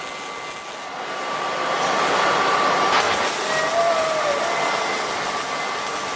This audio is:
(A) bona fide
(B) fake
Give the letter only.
A